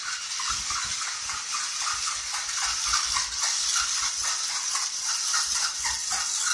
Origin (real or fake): real